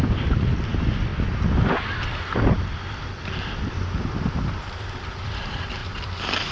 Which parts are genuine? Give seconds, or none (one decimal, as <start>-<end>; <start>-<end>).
1.1-2.9